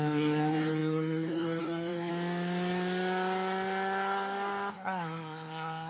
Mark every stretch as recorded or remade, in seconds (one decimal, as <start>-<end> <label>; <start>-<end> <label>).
0.0-2.1 remade; 2.1-4.7 recorded; 4.7-5.9 remade